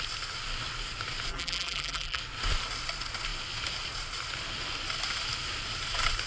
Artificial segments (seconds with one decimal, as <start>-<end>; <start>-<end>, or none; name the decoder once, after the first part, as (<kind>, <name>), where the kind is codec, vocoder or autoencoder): 1.3-2.2 (vocoder, BigVGAN v2)